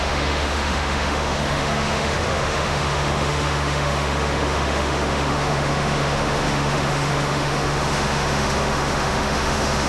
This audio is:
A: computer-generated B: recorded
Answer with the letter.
A